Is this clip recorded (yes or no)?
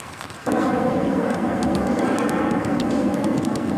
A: no